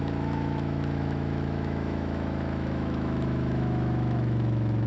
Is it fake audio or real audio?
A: fake